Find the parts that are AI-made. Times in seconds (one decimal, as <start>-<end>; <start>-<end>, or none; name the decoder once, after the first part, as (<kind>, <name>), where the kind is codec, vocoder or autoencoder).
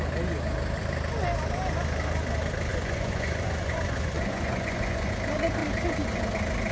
2.7-5.1 (vocoder, Vocos)